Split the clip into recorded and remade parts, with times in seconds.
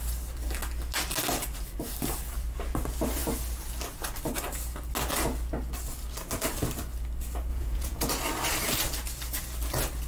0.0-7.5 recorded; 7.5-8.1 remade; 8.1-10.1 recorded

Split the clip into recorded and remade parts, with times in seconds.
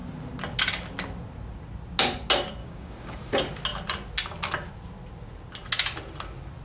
0.0-2.6 recorded; 2.6-3.2 remade; 3.2-6.6 recorded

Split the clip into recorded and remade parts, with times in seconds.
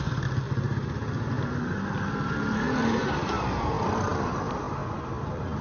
0.0-5.6 recorded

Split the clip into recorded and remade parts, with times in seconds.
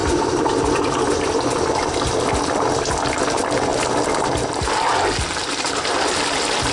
0.0-6.7 recorded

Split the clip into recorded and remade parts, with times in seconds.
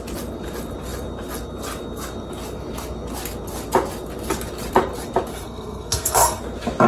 0.0-5.3 recorded; 5.3-6.4 remade; 6.4-6.9 recorded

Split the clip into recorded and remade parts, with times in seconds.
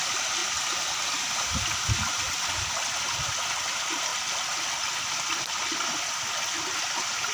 0.0-4.1 recorded; 4.1-5.1 remade; 5.1-7.3 recorded